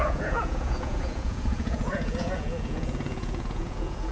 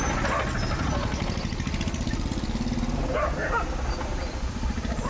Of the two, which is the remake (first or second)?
first